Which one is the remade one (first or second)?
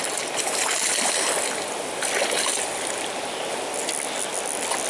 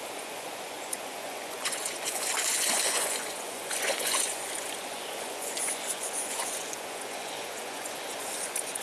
second